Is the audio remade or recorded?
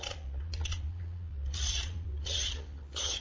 remade